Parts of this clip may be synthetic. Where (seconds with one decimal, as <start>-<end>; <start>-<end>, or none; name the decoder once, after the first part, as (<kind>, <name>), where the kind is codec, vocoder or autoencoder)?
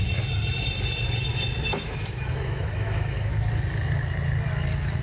1.7-3.3 (autoencoder, DAC-VAE)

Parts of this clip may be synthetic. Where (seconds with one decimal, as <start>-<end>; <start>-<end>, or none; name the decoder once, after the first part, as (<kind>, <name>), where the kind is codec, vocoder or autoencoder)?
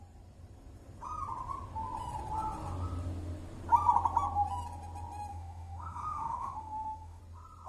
5.3-7.2 (autoencoder, DAC-VAE)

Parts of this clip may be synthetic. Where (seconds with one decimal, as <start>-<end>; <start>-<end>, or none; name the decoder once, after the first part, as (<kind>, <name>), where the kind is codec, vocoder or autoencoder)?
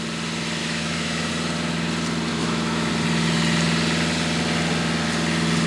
0.6-1.3 (autoencoder, DAC-VAE); 2.3-2.9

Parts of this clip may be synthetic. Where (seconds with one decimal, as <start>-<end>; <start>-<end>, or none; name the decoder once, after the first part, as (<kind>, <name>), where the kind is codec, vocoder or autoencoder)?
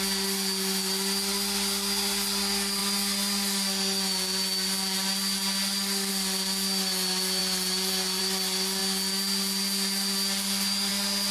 none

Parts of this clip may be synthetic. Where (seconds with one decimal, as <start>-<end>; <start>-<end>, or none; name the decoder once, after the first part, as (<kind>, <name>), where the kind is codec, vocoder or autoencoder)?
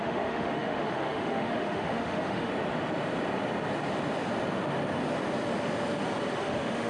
0.0-2.5 (autoencoder, DAC-VAE); 6.4-6.9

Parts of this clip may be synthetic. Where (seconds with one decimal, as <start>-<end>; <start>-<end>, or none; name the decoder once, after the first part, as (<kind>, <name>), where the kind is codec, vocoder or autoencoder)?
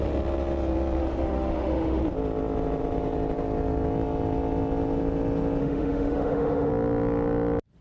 1.0-2.0 (autoencoder, DAC-VAE); 5.6-6.7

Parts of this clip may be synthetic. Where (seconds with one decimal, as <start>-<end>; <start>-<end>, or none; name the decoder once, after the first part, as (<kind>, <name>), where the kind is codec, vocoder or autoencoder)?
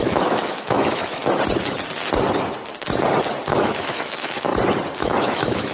0.0-1.2 (autoencoder, DAC-VAE); 3.5-4.5; 5.0-5.7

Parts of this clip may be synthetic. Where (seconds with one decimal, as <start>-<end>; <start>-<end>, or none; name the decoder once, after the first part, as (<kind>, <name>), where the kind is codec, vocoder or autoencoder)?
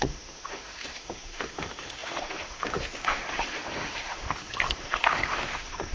0.0-5.9 (autoencoder, DAC-VAE)